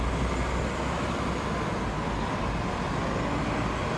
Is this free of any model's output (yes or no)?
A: yes